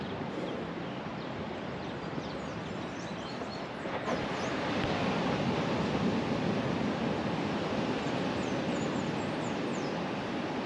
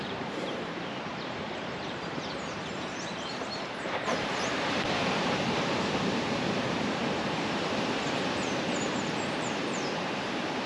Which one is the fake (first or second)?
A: second